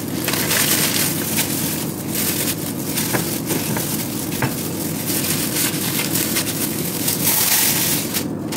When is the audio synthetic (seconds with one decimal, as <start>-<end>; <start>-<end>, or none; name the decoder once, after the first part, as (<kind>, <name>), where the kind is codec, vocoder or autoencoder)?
5.6-7.5 (codec, DAC)